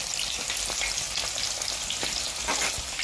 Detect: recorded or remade recorded